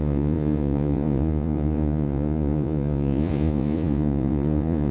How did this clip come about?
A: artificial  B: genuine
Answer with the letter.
A